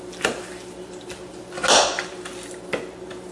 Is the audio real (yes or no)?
yes